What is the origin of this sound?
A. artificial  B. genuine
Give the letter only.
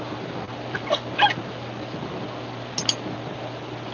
B